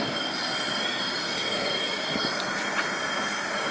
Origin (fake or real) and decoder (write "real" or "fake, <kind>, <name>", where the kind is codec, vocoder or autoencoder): real